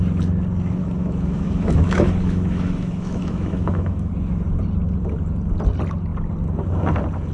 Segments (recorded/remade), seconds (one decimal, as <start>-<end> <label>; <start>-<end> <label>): 0.0-0.8 recorded; 0.8-4.1 remade; 4.1-7.3 recorded